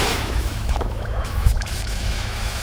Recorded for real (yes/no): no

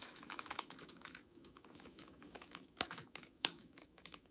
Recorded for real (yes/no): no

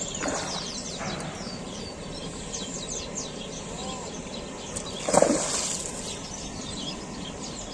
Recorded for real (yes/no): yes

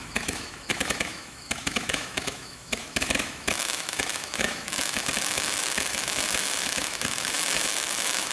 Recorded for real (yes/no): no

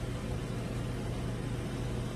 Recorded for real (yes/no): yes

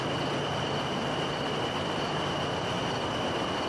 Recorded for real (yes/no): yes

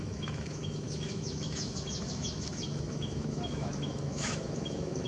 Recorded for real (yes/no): no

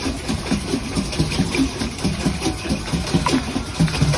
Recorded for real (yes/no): yes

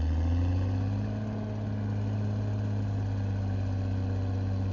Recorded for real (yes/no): yes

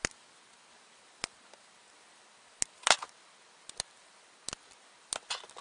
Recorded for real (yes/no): yes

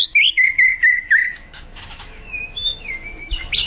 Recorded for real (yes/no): no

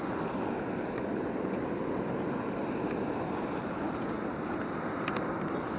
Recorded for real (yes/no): yes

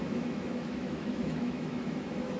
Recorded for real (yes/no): no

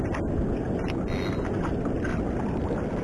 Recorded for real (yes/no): yes